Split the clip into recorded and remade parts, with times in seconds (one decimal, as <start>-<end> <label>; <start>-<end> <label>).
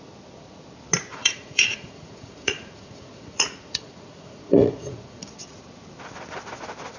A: 0.0-1.1 recorded; 1.1-5.3 remade; 5.3-7.0 recorded